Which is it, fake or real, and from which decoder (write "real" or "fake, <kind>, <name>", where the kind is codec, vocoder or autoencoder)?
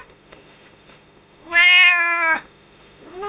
fake, autoencoder, DAC-VAE